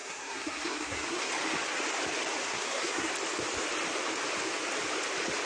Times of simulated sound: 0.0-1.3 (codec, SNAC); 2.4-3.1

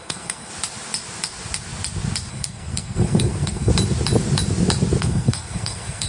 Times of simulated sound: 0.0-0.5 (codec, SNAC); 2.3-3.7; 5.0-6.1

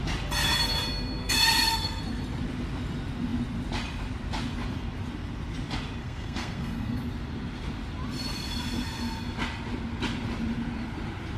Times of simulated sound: 1.2-2.0 (codec, SNAC); 6.0-7.0